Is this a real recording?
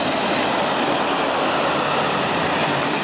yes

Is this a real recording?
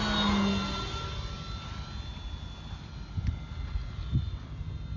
yes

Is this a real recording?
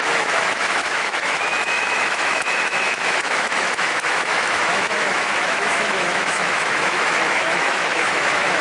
no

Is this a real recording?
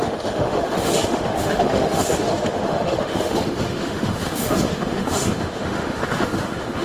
no